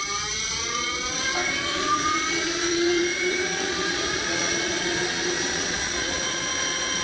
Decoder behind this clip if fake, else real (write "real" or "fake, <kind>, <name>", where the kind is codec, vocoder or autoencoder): fake, vocoder, Vocos